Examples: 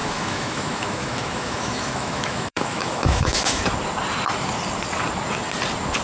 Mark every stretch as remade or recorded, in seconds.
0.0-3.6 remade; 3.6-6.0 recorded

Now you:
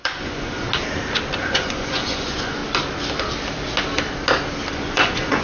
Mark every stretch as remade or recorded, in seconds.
0.0-0.7 remade; 0.7-1.4 recorded; 1.4-2.6 remade; 2.6-4.7 recorded; 4.7-5.4 remade

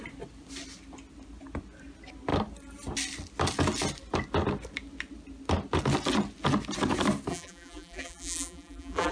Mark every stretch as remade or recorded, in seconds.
0.0-7.3 recorded; 7.3-9.1 remade

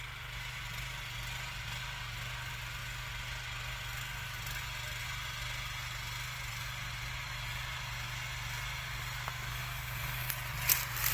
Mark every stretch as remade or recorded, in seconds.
0.0-9.5 recorded; 9.5-10.3 remade; 10.3-11.1 recorded

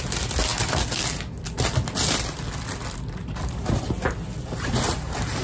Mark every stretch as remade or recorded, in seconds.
0.0-5.4 recorded

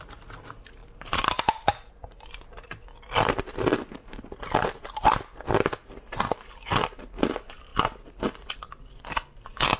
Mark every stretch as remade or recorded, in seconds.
0.0-0.8 recorded; 0.8-1.9 remade; 1.9-9.8 recorded